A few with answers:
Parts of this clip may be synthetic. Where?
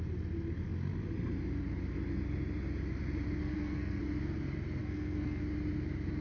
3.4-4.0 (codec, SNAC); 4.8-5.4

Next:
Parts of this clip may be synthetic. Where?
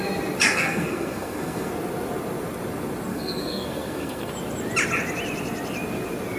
0.4-1.7 (codec, SNAC); 3.1-4.3